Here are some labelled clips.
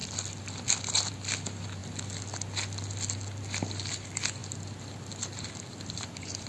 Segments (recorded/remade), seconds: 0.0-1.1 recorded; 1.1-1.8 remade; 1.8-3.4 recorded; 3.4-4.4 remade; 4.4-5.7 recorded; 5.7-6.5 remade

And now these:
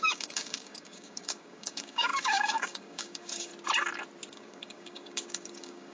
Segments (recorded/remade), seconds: 0.0-3.5 remade; 3.5-4.3 recorded; 4.3-5.9 remade

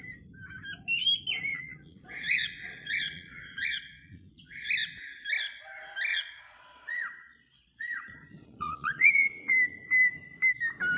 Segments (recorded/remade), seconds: 0.0-1.5 recorded; 1.5-4.7 remade; 4.7-6.1 recorded; 6.1-9.5 remade; 9.5-11.0 recorded

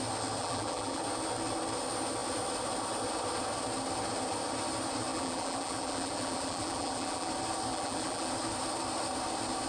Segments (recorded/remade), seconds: 0.0-0.4 recorded; 0.4-1.0 remade; 1.0-5.1 recorded; 5.1-7.3 remade; 7.3-7.7 recorded; 7.7-8.3 remade; 8.3-9.7 recorded